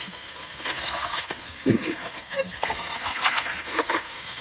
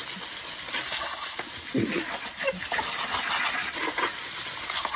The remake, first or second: first